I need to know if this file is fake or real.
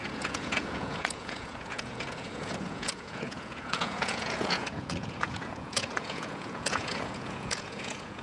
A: fake